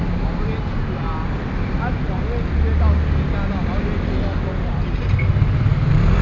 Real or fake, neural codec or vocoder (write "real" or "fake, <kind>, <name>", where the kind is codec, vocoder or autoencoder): real